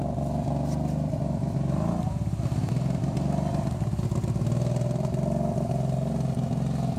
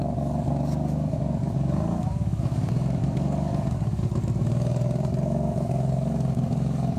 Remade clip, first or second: second